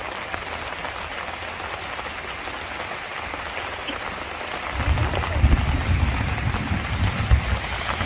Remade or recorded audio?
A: recorded